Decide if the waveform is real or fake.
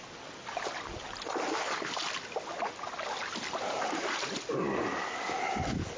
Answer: real